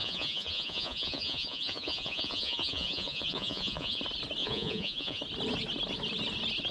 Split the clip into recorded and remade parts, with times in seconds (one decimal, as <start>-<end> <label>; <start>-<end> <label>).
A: 0.0-4.0 remade; 4.0-4.4 recorded; 4.4-5.2 remade; 5.2-6.7 recorded